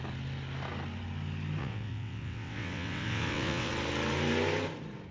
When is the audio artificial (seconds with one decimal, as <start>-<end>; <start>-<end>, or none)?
1.6-3.7